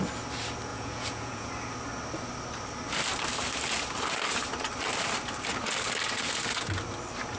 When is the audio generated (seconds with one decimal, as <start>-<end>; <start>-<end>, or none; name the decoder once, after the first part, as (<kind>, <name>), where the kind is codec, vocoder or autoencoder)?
0.7-1.5 (vocoder, Vocos)